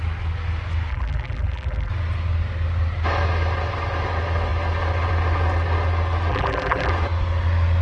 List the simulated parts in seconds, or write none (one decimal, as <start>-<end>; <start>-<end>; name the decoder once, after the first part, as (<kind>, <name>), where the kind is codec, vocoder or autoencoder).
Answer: 0.9-1.9 (vocoder, BigVGAN v2); 6.3-6.9